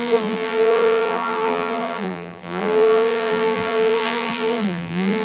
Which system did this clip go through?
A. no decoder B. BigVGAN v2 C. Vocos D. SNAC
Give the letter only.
B